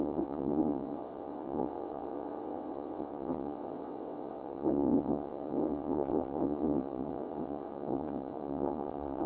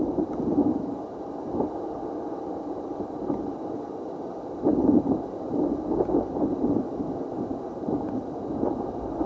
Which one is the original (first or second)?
second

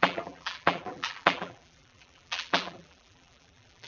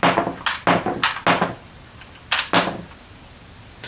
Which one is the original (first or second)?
second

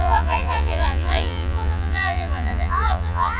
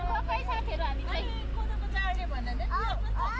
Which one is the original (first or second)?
second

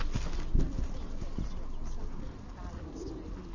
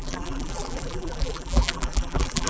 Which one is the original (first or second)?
first